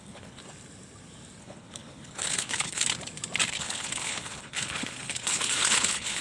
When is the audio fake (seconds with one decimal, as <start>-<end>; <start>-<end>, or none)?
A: 0.0-0.4; 1.4-2.8; 3.5-6.2

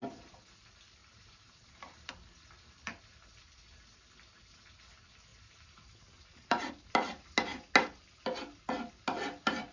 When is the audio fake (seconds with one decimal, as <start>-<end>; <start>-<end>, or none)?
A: 1.0-2.1; 5.3-6.7

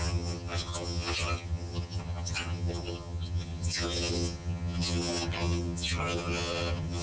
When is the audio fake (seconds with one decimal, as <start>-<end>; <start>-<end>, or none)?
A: 0.0-7.0